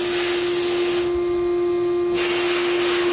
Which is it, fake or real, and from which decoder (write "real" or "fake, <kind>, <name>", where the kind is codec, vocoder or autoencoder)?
real